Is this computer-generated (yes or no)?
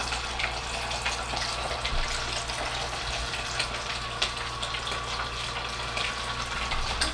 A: no